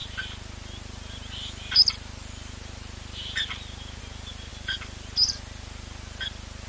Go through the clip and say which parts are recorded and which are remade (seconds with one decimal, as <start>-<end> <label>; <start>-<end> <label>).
0.0-6.7 recorded